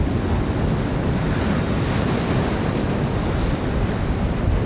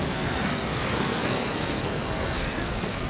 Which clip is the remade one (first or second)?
second